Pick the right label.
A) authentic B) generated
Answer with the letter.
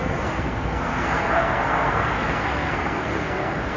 B